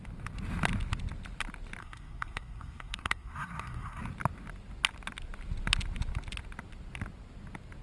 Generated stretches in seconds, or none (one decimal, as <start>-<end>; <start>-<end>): 1.8-4.0